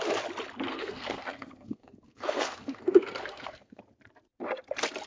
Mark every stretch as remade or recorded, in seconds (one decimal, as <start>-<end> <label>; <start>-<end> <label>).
0.0-0.7 recorded; 0.7-3.8 remade; 3.8-5.1 recorded

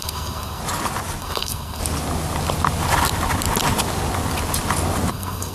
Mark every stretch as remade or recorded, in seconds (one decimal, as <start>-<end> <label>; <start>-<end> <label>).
0.0-0.6 remade; 0.6-1.2 recorded; 1.2-1.8 remade; 1.8-5.1 recorded; 5.1-5.5 remade

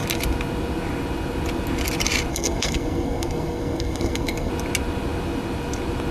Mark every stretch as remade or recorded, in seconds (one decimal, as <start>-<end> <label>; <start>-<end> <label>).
0.0-2.3 recorded; 2.3-4.5 remade; 4.5-6.1 recorded

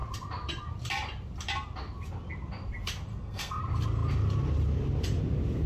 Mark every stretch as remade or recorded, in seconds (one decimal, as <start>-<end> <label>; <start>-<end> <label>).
0.0-3.1 recorded; 3.1-3.6 remade; 3.6-5.7 recorded

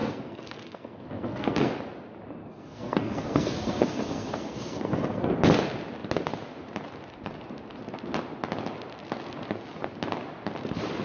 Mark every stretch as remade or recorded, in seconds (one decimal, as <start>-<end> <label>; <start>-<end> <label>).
0.0-1.7 remade; 1.7-2.4 recorded; 2.4-5.3 remade; 5.3-11.0 recorded